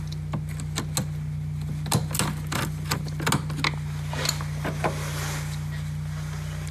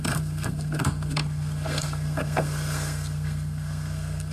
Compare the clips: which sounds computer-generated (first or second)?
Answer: second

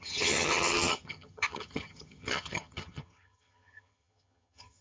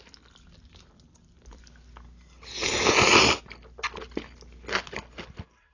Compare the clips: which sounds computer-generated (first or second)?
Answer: first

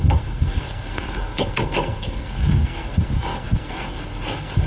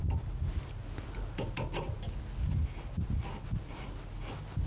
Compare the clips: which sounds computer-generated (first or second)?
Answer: first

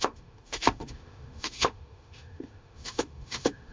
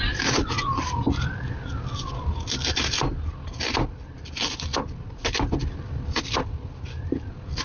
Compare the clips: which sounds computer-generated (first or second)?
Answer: first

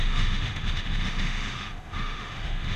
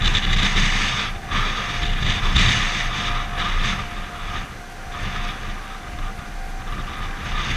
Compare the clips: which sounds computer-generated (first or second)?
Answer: first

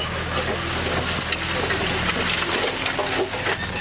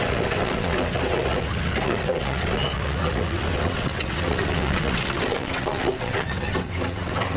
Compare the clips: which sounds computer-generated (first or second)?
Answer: second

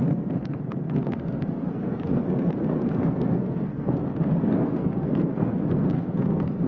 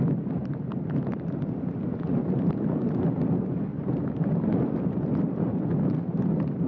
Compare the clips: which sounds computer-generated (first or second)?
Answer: first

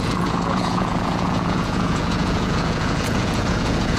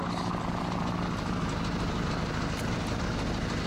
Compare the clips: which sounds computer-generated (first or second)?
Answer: first